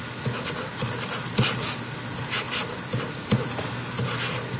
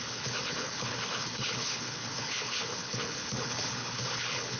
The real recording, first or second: first